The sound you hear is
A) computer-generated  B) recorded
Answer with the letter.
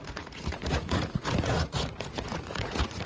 A